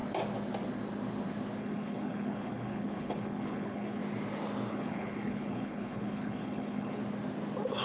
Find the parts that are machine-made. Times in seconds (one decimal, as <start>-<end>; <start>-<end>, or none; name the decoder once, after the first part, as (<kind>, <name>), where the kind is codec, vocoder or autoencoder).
1.6-4.0 (codec, HILCodec); 4.7-7.0